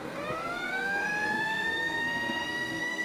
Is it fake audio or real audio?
fake